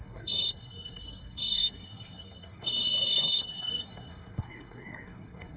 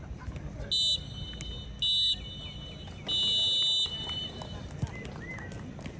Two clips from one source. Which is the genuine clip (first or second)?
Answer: second